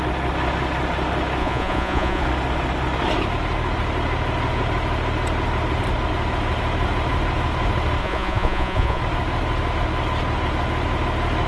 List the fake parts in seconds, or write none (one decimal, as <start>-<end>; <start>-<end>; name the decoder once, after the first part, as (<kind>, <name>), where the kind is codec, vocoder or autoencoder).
1.4-2.2 (vocoder, Vocos); 8.0-9.0